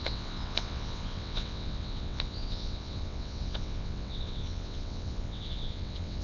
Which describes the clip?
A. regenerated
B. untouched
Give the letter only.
A